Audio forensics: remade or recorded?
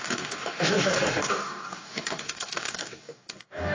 remade